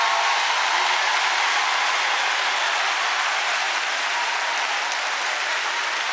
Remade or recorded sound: recorded